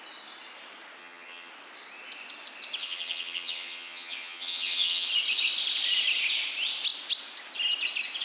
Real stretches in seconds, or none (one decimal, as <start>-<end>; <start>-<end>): 0.0-1.0; 1.5-2.8; 5.1-8.2